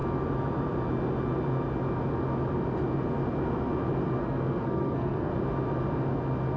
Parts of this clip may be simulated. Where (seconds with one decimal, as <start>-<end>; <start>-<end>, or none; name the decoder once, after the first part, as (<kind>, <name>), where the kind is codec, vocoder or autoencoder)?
4.2-5.3 (codec, SNAC)